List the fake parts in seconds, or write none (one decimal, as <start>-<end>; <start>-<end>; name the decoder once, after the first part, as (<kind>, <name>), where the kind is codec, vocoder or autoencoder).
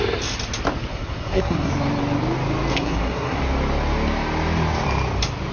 0.9-1.7 (codec, SNAC); 2.7-3.4